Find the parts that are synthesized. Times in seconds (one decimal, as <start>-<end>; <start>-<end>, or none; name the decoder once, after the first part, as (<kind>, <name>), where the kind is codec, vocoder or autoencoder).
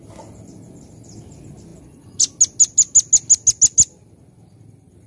none